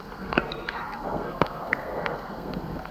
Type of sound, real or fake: fake